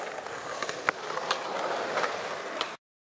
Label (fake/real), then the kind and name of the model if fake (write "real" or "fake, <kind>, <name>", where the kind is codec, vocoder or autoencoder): real